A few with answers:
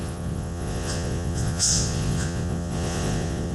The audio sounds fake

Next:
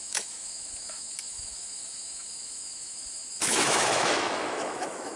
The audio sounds fake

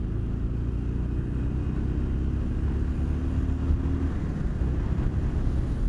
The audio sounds real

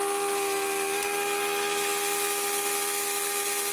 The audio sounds real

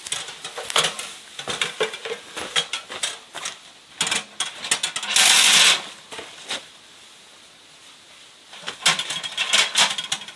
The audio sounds real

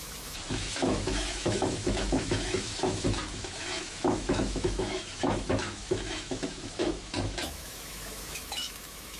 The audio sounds fake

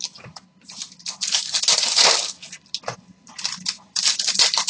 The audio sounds real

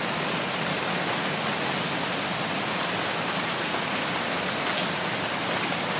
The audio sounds real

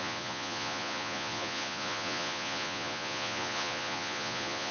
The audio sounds fake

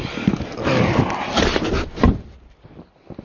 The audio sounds real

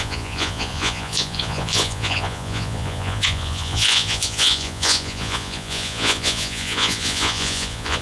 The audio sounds fake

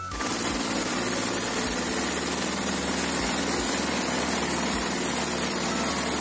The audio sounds real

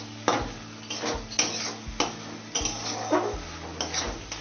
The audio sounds real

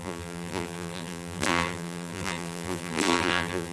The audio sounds fake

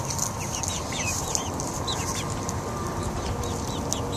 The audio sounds real